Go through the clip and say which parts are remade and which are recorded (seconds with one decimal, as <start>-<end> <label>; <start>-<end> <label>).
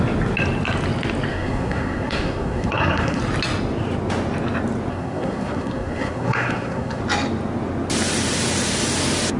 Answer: 0.0-1.3 recorded; 1.3-3.2 remade; 3.2-4.9 recorded; 4.9-7.0 remade; 7.0-9.4 recorded